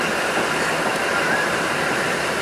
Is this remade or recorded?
remade